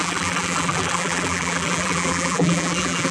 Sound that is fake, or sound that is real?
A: fake